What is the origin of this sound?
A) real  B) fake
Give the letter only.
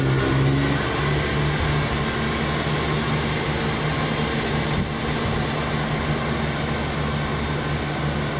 A